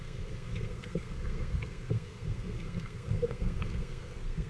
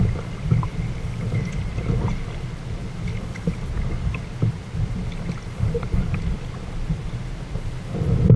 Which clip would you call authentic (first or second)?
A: second